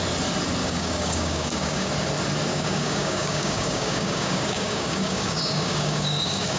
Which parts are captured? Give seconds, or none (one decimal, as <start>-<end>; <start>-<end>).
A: 0.0-0.6; 1.9-2.5

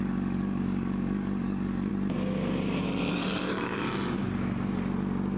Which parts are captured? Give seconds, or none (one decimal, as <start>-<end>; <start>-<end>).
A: 1.9-3.1; 3.7-5.4

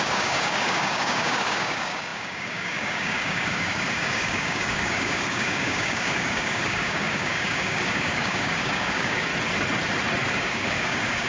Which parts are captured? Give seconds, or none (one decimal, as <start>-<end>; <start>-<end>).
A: 9.3-10.3

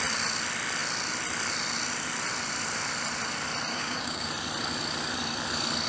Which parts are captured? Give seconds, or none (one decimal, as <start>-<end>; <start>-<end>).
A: 0.0-3.7; 4.3-5.9

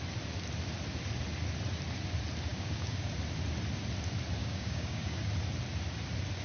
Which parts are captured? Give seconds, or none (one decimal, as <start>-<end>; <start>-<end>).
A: 0.0-2.5; 3.1-4.4; 5.3-6.4

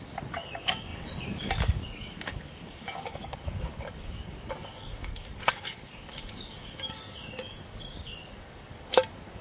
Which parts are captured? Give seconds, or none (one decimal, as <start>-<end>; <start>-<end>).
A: none

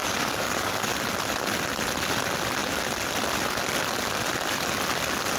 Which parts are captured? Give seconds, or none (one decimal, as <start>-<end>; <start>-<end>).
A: 0.9-5.4

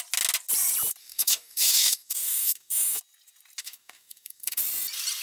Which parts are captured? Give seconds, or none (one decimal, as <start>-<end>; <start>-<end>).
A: 0.0-1.0; 3.0-3.6; 4.6-5.2